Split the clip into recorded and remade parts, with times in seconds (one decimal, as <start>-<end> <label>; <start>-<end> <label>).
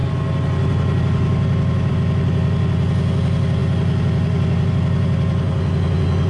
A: 0.0-6.3 recorded